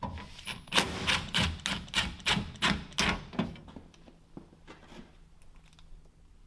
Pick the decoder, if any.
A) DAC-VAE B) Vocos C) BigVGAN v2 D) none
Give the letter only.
D